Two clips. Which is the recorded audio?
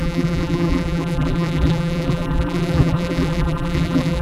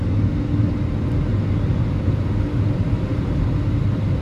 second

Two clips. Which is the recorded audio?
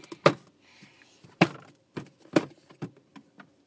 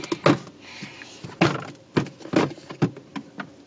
second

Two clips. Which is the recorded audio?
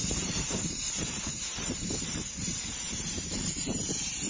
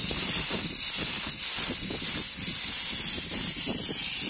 second